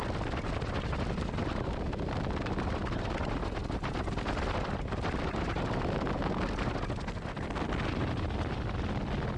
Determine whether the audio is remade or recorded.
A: recorded